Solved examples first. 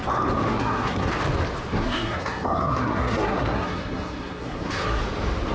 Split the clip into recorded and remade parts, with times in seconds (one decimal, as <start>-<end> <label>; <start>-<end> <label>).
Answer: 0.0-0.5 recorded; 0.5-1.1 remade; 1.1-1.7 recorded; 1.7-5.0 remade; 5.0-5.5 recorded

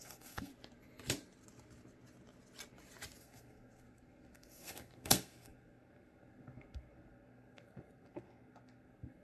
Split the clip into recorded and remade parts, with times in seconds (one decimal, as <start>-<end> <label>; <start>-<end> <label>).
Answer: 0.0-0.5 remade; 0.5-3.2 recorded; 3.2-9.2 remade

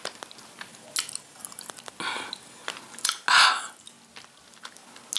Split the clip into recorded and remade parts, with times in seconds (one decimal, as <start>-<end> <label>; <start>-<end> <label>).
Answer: 0.0-5.2 recorded

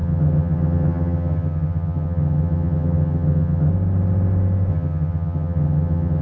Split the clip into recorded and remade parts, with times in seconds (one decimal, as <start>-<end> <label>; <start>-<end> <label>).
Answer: 0.0-3.7 remade; 3.7-4.7 recorded; 4.7-6.2 remade

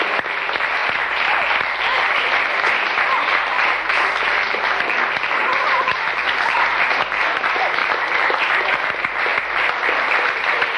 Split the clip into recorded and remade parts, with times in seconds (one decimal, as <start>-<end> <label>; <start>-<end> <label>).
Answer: 0.0-0.8 recorded; 0.8-2.4 remade; 2.4-7.8 recorded; 7.8-8.4 remade; 8.4-10.8 recorded